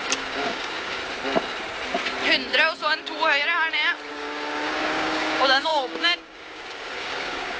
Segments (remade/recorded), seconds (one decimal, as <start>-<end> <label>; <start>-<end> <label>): 0.0-1.0 remade; 1.0-4.1 recorded; 4.1-7.6 remade